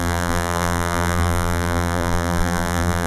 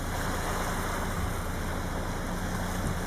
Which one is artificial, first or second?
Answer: first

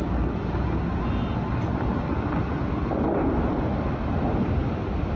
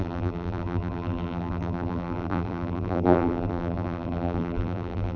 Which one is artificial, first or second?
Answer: second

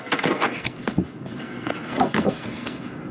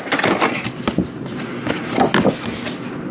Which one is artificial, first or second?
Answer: first